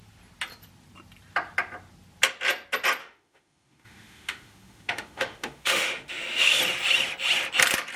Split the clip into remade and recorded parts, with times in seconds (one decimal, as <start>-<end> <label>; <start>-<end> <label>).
0.0-3.0 recorded; 3.0-6.6 remade; 6.6-8.0 recorded